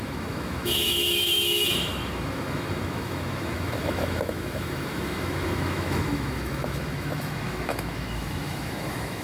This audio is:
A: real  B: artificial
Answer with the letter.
B